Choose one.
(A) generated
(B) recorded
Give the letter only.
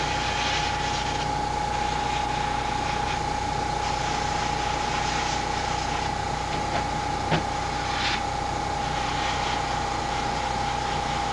B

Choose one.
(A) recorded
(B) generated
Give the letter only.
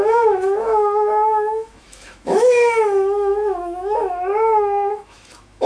B